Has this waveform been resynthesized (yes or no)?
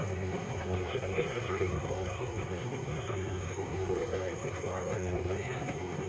yes